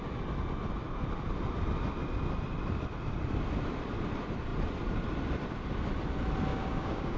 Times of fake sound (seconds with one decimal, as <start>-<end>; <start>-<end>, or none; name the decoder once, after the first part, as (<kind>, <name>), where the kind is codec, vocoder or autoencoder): 6.5-7.2 (codec, DAC)